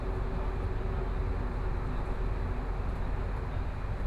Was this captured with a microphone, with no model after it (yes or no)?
yes